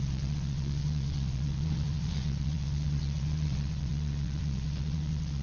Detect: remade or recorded remade